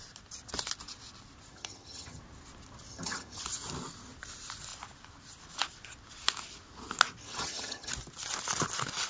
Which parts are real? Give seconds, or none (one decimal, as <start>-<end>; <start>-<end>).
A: 0.0-1.5; 2.2-2.9; 3.4-7.2; 7.9-9.1